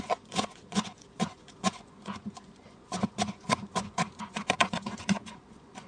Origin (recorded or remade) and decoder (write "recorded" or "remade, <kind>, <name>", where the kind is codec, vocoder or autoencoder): remade, vocoder, Vocos